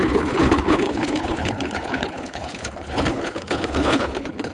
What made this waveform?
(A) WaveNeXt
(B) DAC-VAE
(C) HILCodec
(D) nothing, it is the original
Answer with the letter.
C